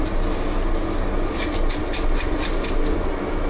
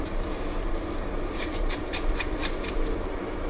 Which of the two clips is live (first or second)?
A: first